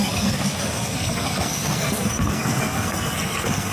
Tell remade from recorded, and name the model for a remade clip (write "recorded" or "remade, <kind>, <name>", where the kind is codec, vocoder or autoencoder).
remade, codec, SNAC